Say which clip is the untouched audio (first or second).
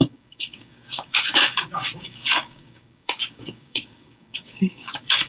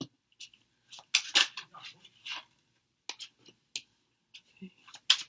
second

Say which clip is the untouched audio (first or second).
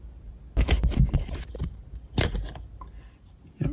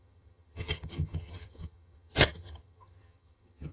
first